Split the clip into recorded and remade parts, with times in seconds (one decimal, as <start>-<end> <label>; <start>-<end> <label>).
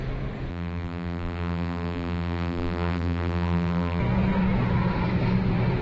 0.0-0.5 recorded; 0.5-4.0 remade; 4.0-5.8 recorded